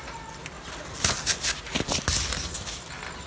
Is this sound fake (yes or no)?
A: no